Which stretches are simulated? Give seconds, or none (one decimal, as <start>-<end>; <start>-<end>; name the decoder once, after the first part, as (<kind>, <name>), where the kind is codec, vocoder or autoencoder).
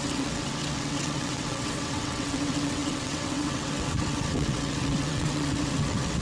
0.0-6.2 (vocoder, WaveNeXt)